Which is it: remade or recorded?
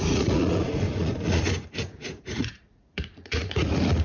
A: remade